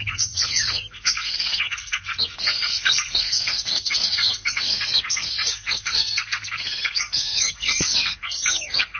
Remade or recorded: remade